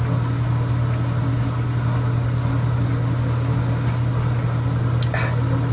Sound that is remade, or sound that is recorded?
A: recorded